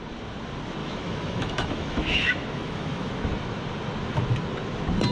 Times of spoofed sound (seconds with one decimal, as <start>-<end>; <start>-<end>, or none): 0.8-3.1